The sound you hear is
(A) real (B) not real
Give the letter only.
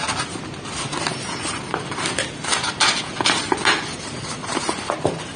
A